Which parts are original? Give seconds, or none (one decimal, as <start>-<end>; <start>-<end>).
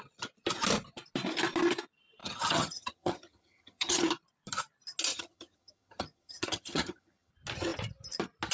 0.0-2.2; 4.0-5.1; 7.3-8.5